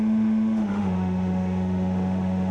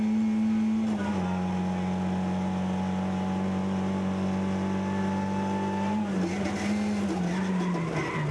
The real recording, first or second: second